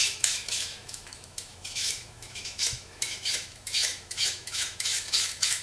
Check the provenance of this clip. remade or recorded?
remade